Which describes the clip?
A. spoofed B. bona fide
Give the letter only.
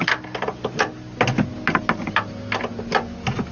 B